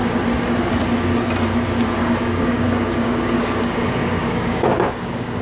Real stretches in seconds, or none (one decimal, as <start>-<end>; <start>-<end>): 0.0-2.0